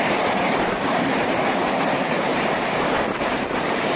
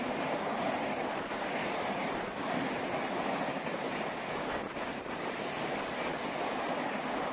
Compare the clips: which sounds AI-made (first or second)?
first